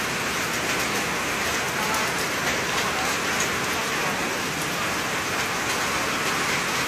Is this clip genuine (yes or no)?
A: yes